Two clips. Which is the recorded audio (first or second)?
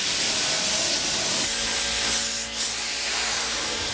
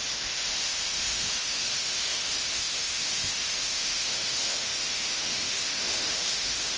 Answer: first